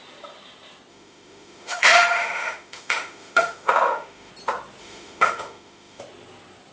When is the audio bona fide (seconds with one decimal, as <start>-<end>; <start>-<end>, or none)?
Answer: 0.0-0.9; 4.3-4.8; 6.0-6.7